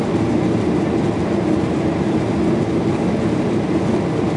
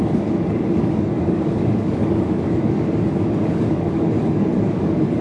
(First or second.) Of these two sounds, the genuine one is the first